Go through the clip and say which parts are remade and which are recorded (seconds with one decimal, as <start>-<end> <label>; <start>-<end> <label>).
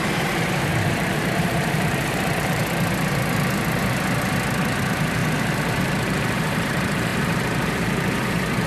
0.0-2.6 remade; 2.6-4.8 recorded; 4.8-5.2 remade; 5.2-5.8 recorded; 5.8-8.7 remade